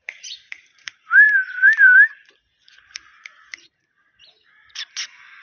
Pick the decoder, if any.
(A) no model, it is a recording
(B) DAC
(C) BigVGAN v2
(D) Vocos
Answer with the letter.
C